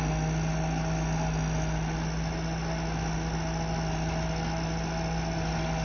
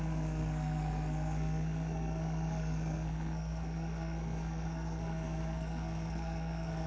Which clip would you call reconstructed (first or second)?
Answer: second